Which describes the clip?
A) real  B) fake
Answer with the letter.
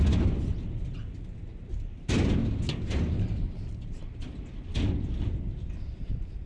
A